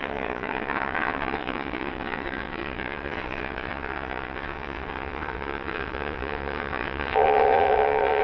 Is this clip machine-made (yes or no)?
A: yes